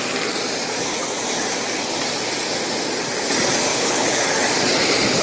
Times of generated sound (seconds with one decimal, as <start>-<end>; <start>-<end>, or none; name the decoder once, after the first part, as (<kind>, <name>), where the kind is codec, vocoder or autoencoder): 3.7-4.3 (codec, HILCodec)